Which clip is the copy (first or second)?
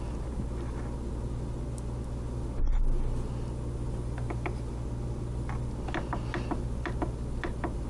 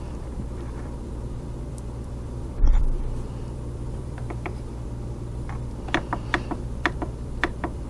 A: second